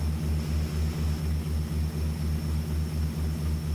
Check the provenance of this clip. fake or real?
real